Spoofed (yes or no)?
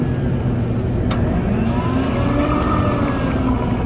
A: no